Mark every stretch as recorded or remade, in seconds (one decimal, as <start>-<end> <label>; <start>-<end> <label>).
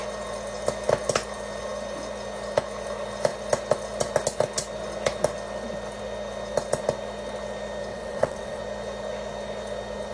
0.0-7.9 recorded; 7.9-8.6 remade; 8.6-10.1 recorded